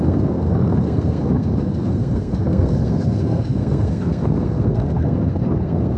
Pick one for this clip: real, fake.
fake